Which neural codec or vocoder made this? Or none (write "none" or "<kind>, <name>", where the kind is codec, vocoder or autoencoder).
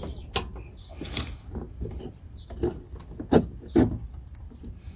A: none